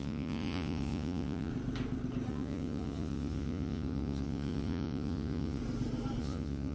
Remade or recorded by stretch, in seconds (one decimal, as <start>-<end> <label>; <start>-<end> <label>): 0.0-1.5 remade; 1.5-2.3 recorded; 2.3-5.6 remade; 5.6-6.2 recorded; 6.2-6.7 remade